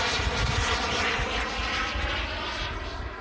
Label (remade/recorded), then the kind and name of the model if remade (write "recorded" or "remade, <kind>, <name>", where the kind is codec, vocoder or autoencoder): recorded